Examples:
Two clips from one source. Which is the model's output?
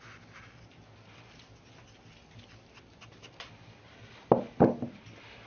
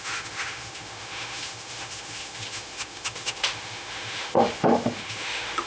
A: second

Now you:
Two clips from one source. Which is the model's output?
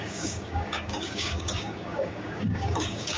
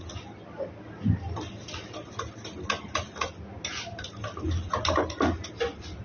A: first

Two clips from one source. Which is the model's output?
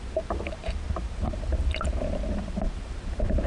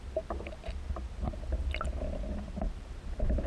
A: first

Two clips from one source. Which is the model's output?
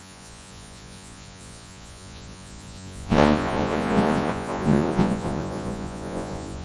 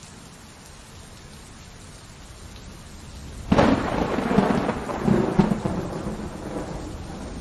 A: first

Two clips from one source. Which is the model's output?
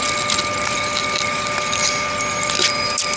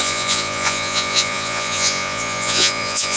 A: second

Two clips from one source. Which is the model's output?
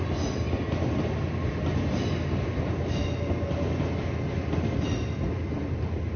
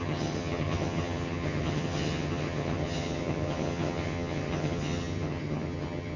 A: second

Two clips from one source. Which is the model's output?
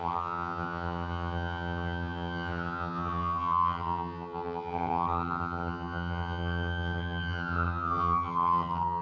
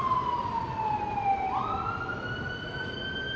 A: first